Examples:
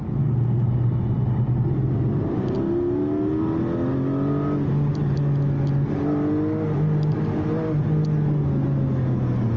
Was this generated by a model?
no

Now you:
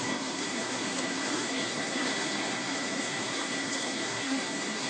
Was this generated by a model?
yes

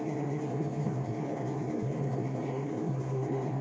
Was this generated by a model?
yes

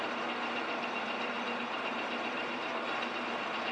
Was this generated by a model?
no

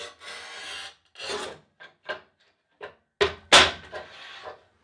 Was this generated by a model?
no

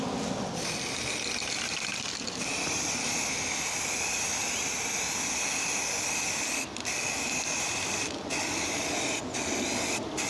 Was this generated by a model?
no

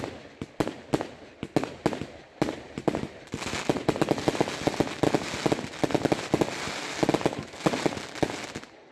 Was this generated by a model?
no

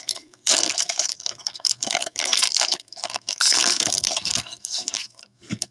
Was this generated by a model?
yes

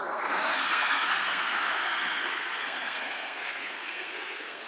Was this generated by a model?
yes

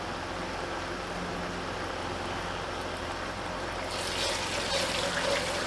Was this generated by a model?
no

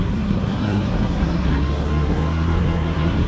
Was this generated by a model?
yes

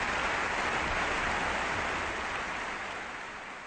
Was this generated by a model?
no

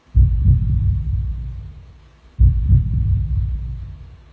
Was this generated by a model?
no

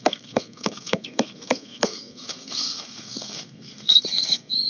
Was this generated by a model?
yes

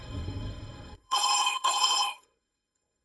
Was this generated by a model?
yes